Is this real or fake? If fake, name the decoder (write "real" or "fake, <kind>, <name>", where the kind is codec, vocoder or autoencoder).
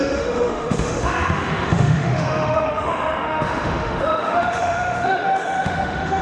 fake, autoencoder, DAC-VAE